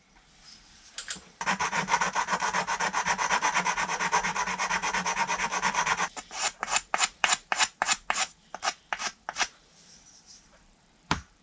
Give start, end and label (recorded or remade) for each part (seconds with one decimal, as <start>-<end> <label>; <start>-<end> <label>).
0.0-11.4 remade